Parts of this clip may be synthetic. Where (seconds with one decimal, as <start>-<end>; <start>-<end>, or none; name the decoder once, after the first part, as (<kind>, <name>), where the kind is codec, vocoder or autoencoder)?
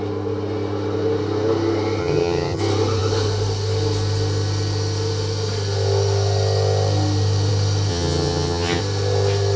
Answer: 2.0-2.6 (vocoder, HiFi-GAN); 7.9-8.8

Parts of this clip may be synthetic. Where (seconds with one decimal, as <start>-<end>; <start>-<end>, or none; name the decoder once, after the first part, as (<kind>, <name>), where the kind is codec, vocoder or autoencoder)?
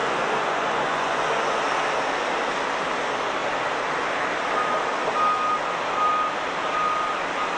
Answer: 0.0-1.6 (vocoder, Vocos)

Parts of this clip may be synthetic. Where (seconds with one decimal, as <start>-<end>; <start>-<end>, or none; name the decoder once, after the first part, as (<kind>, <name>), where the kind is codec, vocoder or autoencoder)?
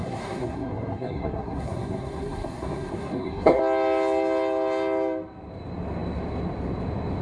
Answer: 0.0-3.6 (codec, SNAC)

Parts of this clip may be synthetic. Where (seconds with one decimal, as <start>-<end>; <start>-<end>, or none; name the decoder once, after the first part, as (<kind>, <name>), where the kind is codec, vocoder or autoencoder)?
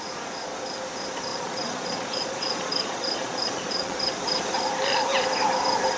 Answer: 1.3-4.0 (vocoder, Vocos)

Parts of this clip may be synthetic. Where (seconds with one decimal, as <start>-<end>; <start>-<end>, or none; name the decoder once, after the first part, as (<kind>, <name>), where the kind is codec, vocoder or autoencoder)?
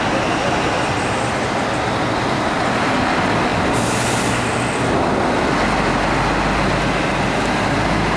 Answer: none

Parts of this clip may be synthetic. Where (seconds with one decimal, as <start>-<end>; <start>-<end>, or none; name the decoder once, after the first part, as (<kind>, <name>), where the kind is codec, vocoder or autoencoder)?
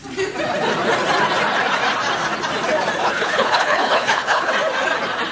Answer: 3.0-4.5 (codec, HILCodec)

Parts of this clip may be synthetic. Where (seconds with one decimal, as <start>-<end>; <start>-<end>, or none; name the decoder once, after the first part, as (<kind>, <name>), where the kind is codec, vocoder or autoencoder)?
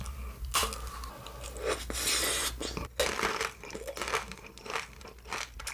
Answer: none